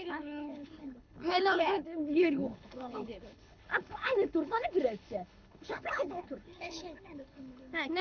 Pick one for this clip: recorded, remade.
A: remade